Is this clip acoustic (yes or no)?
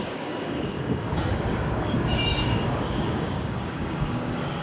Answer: no